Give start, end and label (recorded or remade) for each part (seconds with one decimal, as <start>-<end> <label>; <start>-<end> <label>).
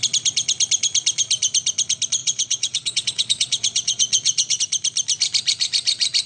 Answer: 0.0-2.2 recorded; 2.2-4.6 remade; 4.6-6.3 recorded